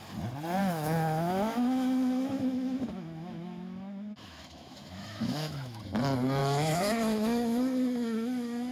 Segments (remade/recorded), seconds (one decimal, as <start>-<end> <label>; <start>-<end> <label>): 0.0-0.6 recorded; 0.6-5.8 remade; 5.8-6.4 recorded; 6.4-8.7 remade